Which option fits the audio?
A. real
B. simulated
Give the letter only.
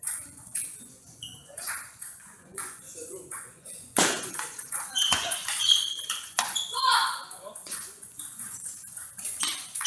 B